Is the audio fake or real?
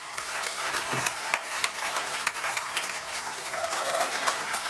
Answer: fake